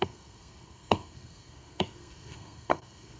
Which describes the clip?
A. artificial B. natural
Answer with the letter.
A